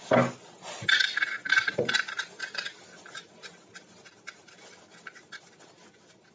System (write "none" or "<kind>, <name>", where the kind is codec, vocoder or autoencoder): none